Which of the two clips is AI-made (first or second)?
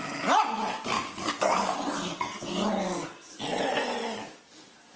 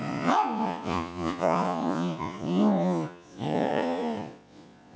second